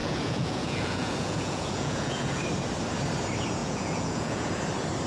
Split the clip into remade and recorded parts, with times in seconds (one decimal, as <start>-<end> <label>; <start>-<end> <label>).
0.0-2.4 remade; 2.4-3.6 recorded; 3.6-4.5 remade; 4.5-5.1 recorded